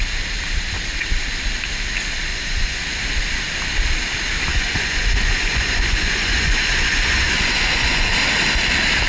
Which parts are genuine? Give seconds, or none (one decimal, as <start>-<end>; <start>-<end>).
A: 0.0-2.3; 2.8-4.5; 8.1-9.1